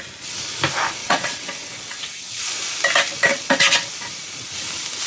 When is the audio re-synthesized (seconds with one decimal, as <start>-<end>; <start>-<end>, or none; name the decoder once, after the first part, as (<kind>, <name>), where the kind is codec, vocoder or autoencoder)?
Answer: 1.0-2.5 (vocoder, WaveNeXt); 3.3-3.9